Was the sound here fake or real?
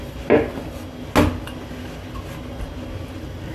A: real